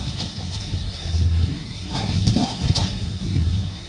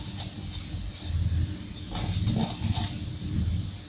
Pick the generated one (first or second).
first